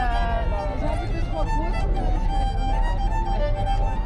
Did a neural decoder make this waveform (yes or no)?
no